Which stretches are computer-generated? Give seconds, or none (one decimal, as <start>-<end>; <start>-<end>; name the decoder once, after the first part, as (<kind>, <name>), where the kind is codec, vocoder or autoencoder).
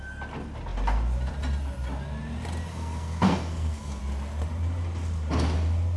2.7-4.0 (codec, SNAC)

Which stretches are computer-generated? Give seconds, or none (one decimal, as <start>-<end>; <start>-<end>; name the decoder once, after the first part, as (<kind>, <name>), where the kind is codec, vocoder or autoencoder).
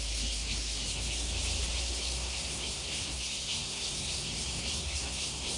0.0-1.3 (codec, SNAC); 1.8-5.6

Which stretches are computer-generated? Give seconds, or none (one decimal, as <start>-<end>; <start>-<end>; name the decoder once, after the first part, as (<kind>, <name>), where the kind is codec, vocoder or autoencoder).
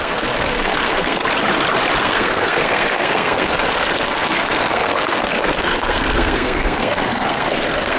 0.0-1.2 (codec, SNAC); 2.0-8.0